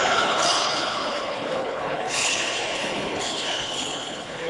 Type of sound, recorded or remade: remade